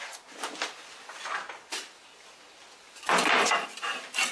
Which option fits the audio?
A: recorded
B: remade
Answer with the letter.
A